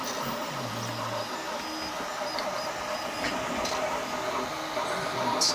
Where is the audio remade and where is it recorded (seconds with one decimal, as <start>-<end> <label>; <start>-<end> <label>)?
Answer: 0.0-5.5 recorded